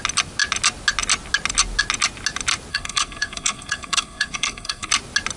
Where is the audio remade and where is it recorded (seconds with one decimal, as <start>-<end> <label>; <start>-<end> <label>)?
0.0-2.7 recorded; 2.7-4.9 remade; 4.9-5.4 recorded